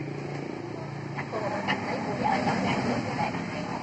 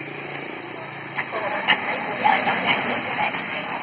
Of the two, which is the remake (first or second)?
second